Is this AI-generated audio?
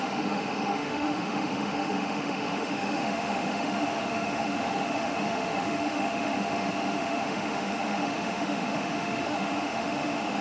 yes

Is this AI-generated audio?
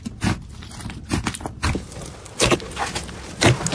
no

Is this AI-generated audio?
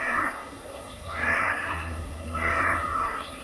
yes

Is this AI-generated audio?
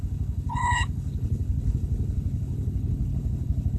yes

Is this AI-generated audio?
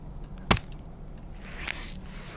no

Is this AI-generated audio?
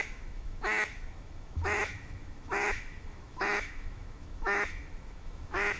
yes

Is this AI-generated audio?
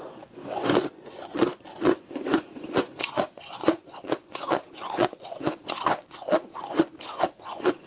yes